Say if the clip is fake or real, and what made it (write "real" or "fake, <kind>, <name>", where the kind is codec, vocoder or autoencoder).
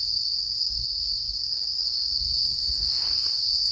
fake, codec, SNAC